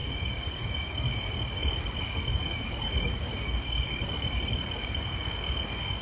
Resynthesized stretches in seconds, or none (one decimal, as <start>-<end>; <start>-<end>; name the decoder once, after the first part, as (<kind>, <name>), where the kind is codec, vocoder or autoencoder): 0.0-6.0 (codec, DAC)